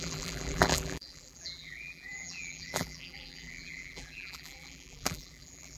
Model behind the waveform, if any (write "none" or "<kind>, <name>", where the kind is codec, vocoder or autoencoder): vocoder, BigVGAN v2